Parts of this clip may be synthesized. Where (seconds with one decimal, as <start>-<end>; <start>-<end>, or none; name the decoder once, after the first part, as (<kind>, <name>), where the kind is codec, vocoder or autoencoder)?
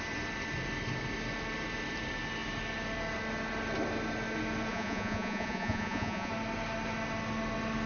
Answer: 4.7-6.3 (vocoder, Vocos)